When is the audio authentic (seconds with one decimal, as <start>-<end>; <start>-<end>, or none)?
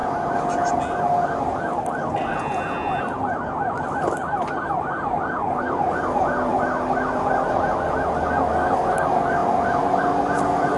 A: 0.0-10.8